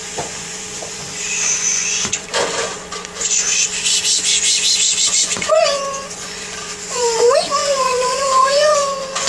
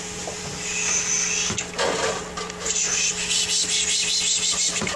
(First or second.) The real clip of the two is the second